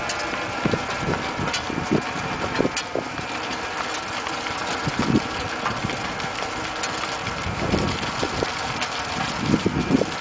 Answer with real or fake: real